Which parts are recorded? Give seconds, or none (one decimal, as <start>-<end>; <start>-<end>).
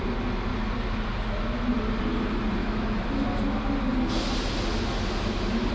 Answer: 0.0-2.6; 3.4-5.7